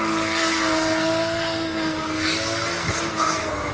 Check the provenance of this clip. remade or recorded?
remade